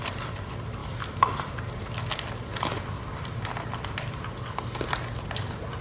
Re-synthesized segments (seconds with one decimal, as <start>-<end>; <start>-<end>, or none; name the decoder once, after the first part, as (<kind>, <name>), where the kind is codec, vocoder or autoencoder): none